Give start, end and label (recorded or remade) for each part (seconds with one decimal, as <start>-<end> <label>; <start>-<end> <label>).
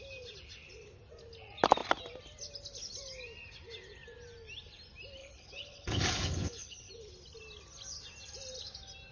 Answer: 0.0-5.2 recorded; 5.2-6.9 remade; 6.9-9.1 recorded